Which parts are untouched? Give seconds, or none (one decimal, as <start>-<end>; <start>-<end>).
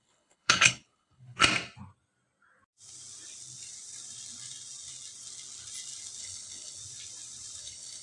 1.4-6.2; 6.8-7.6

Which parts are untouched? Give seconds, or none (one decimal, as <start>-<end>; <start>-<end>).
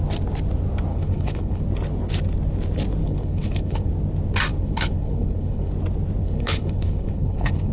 0.0-0.9; 1.6-3.0; 3.9-4.5; 5.7-6.2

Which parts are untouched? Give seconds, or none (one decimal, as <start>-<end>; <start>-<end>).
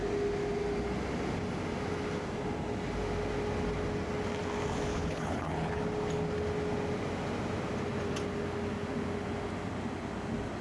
0.0-4.9; 5.8-10.6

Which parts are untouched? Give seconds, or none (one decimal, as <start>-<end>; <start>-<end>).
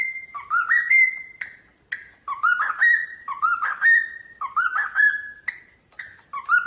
0.0-6.7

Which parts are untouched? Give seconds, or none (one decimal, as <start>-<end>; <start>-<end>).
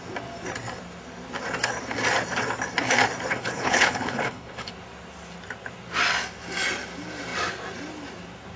0.0-3.3; 4.7-8.6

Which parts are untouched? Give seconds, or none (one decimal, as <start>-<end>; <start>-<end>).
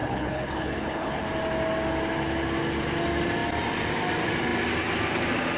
1.2-5.6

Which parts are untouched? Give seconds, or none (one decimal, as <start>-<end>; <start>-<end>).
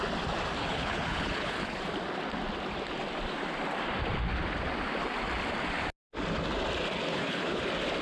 0.0-0.6; 1.8-7.1; 7.6-8.0